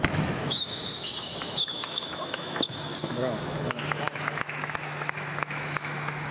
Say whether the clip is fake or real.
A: fake